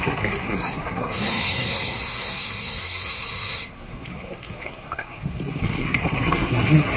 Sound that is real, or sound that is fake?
fake